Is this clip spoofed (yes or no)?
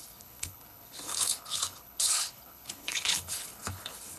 yes